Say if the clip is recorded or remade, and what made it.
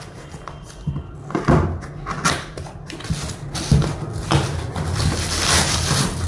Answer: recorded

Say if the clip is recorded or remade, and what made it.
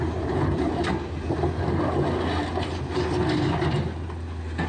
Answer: recorded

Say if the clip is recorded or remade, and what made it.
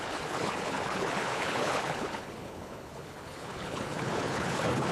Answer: remade, codec, HILCodec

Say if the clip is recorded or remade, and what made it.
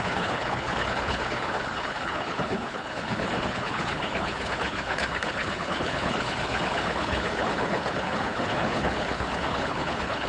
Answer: remade, codec, HILCodec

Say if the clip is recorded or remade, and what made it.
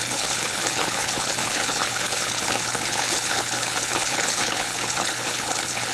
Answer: remade, codec, HILCodec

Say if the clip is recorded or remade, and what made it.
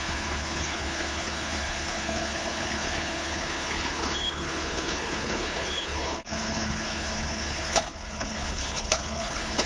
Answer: remade, codec, HILCodec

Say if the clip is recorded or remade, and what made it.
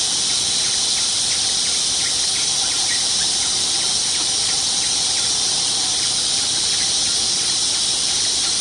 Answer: recorded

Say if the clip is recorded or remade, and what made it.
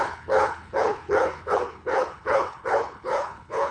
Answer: remade, codec, HILCodec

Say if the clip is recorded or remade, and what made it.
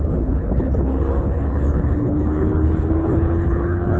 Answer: remade, codec, HILCodec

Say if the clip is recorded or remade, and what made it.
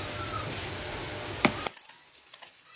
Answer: recorded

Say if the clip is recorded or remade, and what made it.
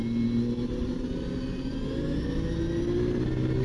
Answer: recorded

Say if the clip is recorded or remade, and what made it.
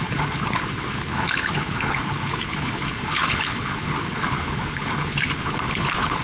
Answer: remade, codec, HILCodec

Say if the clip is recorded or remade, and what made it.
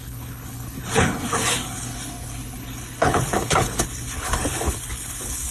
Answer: remade, codec, HILCodec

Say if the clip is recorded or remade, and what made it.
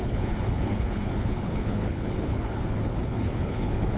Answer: remade, codec, HILCodec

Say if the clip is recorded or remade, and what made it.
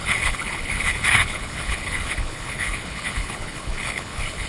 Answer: remade, codec, HILCodec